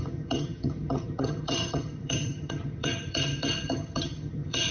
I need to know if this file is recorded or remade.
remade